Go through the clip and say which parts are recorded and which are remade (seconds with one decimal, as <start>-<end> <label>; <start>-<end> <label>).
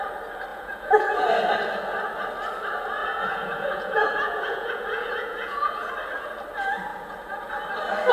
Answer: 0.0-0.5 recorded; 0.5-1.3 remade; 1.3-3.0 recorded; 3.0-5.9 remade; 5.9-6.9 recorded; 6.9-7.5 remade; 7.5-8.1 recorded